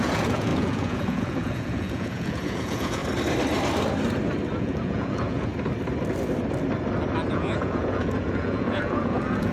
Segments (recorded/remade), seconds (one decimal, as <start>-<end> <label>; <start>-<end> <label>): 0.0-3.0 remade; 3.0-4.6 recorded; 4.6-5.5 remade; 5.5-7.3 recorded; 7.3-9.5 remade